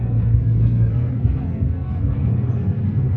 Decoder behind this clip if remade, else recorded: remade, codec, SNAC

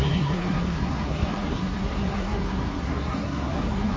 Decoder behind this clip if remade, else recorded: remade, codec, SNAC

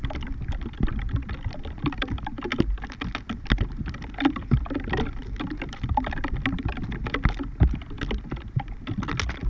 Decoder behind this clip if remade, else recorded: recorded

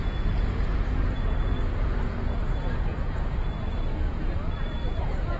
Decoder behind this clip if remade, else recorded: remade, vocoder, Vocos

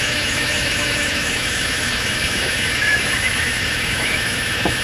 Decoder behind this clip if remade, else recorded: remade, autoencoder, DAC-VAE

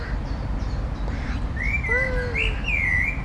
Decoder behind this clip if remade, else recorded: recorded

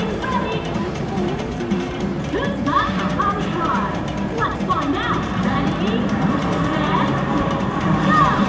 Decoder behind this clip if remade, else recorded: remade, vocoder, BigVGAN v2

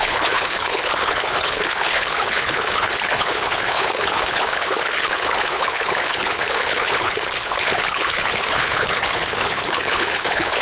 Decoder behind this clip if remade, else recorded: remade, codec, HILCodec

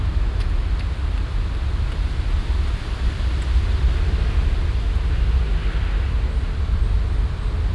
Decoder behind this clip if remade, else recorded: recorded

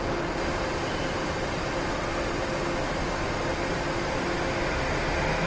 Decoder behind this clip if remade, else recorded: recorded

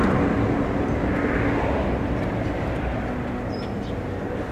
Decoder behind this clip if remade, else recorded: recorded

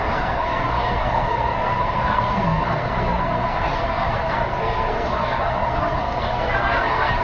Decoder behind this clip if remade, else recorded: remade, codec, SNAC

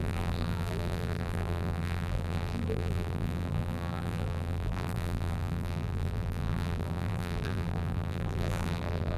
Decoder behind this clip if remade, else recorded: remade, vocoder, BigVGAN v2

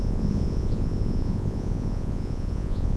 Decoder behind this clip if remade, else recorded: remade, vocoder, Vocos